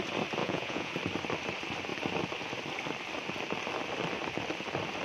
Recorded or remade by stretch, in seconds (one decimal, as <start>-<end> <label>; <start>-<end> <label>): 0.0-0.4 recorded; 0.4-0.9 remade; 0.9-5.0 recorded